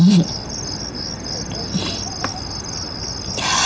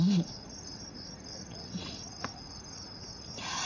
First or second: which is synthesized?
second